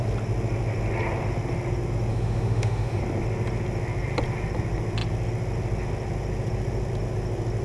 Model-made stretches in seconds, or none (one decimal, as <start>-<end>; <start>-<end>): 2.1-3.0